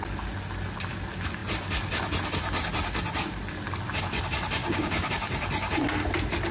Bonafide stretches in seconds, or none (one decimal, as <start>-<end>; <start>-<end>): 0.0-4.6; 5.1-6.5

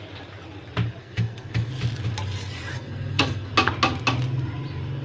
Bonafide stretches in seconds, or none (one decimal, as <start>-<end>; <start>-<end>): 0.0-1.0; 1.7-2.7; 3.5-5.0